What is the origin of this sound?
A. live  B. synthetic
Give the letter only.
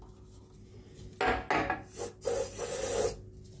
A